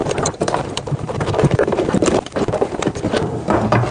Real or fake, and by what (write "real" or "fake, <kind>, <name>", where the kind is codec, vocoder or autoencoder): fake, vocoder, BigVGAN v2